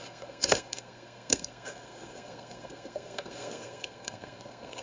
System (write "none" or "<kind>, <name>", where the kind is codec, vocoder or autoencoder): codec, SNAC